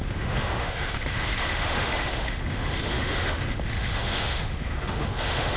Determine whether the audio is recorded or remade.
remade